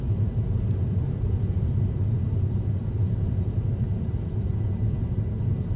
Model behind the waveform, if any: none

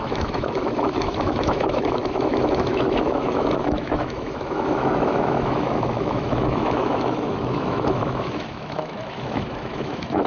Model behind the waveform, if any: autoencoder, DAC-VAE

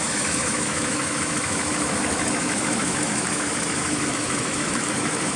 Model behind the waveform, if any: autoencoder, DAC-VAE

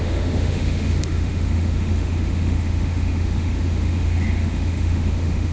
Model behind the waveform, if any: autoencoder, DAC-VAE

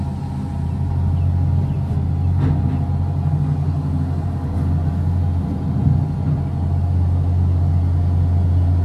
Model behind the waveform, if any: none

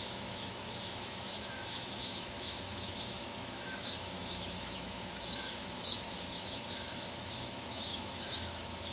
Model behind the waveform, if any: autoencoder, DAC-VAE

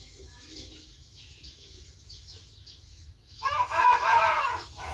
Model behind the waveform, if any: autoencoder, DAC-VAE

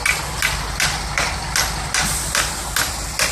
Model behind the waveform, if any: none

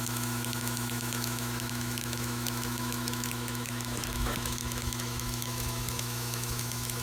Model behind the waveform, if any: autoencoder, DAC-VAE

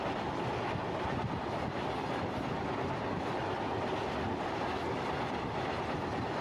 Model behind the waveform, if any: none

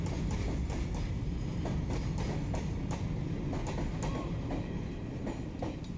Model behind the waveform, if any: none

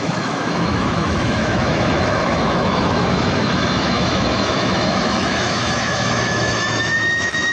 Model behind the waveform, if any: autoencoder, DAC-VAE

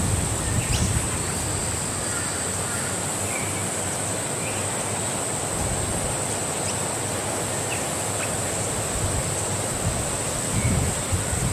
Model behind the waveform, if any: none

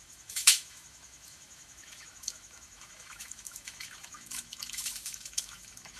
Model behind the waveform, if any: autoencoder, DAC-VAE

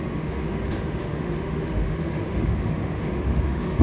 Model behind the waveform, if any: autoencoder, DAC-VAE